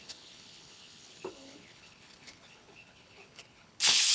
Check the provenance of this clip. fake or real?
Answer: fake